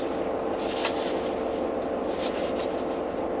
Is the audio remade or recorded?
recorded